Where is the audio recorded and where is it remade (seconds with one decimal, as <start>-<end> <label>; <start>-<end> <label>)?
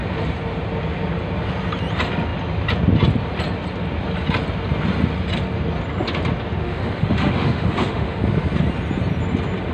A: 0.0-6.6 recorded; 6.6-8.2 remade; 8.2-9.7 recorded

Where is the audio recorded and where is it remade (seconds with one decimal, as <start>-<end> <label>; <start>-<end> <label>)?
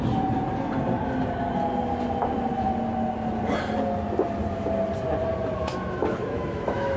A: 0.0-5.6 recorded; 5.6-7.0 remade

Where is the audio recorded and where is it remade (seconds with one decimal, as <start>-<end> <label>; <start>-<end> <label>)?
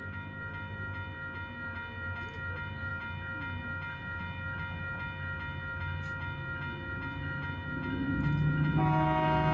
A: 0.0-9.5 recorded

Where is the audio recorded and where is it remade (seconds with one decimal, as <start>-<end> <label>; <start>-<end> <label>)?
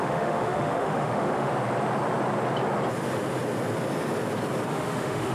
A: 0.0-1.5 remade; 1.5-4.7 recorded; 4.7-5.3 remade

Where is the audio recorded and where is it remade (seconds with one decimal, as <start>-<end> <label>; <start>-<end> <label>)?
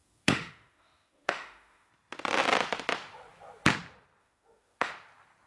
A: 0.0-1.9 remade; 1.9-4.2 recorded; 4.2-4.9 remade; 4.9-5.5 recorded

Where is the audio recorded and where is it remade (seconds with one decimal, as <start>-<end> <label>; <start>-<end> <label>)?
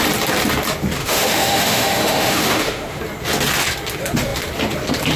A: 0.0-1.0 recorded; 1.0-3.0 remade; 3.0-5.2 recorded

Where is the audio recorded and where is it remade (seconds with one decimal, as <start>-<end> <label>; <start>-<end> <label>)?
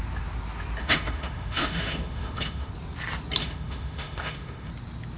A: 0.0-0.8 recorded; 0.8-2.7 remade; 2.7-3.4 recorded; 3.4-4.7 remade; 4.7-5.2 recorded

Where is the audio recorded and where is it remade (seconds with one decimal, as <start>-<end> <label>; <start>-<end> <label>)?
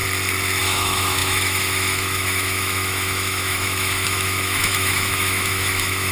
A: 0.0-0.6 recorded; 0.6-6.1 remade